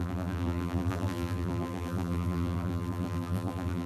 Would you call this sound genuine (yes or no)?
no